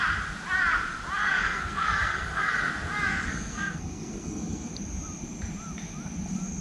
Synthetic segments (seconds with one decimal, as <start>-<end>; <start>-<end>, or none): 1.2-2.7; 3.1-4.7